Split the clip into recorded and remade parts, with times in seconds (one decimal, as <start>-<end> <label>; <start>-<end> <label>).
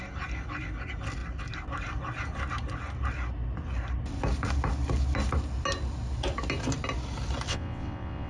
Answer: 0.0-7.5 recorded; 7.5-8.3 remade